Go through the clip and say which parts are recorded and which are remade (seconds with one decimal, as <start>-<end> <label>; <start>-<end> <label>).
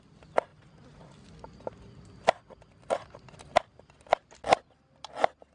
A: 0.0-5.5 recorded